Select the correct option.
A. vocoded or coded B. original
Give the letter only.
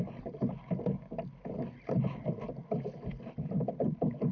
B